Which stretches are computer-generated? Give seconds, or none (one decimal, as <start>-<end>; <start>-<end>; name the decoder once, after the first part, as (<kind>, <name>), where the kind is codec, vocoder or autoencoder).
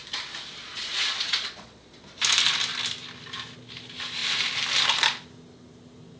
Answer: 0.7-2.0 (vocoder, Vocos)